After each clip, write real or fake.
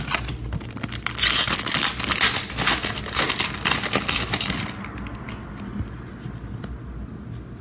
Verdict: real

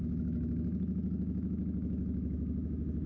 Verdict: fake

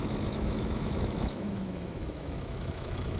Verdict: fake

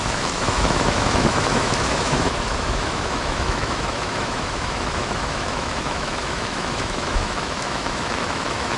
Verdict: fake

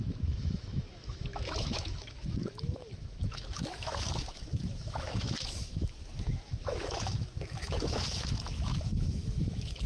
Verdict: fake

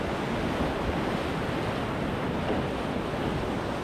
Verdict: real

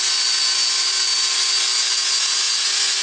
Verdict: real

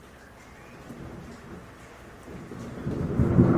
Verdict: real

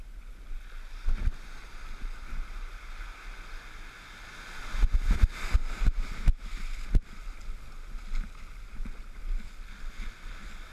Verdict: real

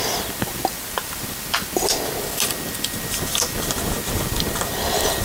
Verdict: real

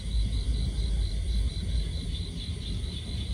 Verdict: real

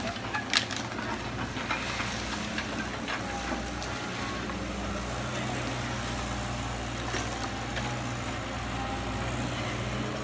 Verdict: real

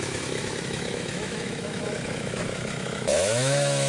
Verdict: fake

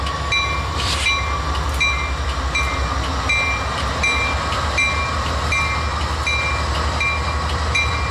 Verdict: real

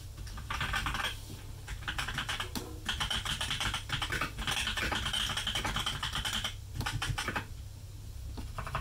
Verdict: real